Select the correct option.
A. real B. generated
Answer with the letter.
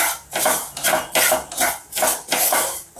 A